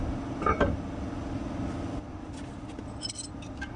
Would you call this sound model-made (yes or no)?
no